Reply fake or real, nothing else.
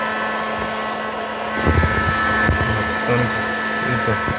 real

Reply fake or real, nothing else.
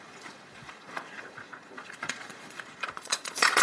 fake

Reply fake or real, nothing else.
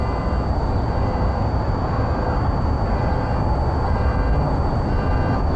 real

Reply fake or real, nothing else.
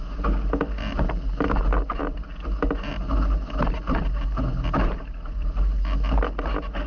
real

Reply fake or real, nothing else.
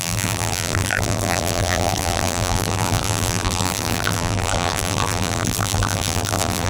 fake